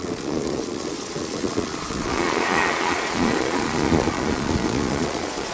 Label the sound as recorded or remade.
remade